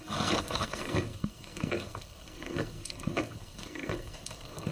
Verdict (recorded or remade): remade